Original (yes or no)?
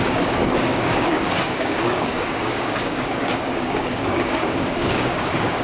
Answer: no